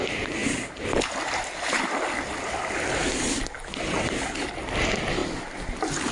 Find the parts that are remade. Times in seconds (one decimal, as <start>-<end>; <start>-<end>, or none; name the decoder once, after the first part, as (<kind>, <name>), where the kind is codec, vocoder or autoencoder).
none